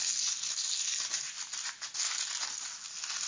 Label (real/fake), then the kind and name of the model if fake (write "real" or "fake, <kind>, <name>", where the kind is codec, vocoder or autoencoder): real